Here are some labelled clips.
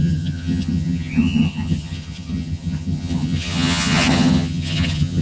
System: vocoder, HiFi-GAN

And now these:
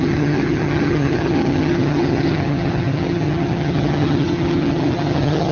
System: vocoder, HiFi-GAN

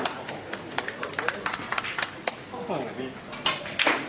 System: none